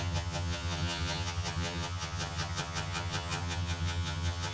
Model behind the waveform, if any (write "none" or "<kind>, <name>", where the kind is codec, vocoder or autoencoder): vocoder, HiFi-GAN